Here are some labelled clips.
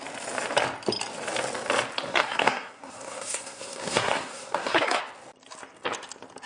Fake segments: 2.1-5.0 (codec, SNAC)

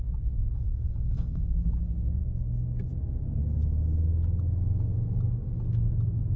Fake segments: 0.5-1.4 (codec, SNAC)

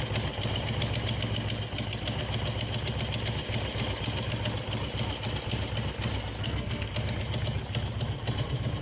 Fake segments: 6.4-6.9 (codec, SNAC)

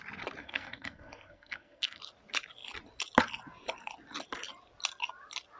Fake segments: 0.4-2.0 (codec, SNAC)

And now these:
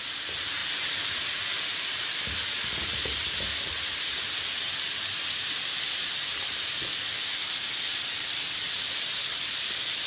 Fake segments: none

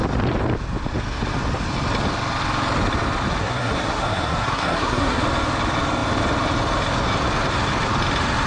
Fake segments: 3.4-5.2 (codec, SNAC)

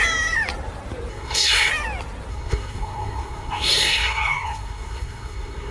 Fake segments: 1.1-1.7 (codec, SNAC); 2.3-5.7

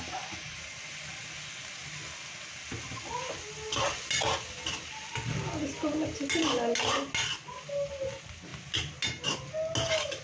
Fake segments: none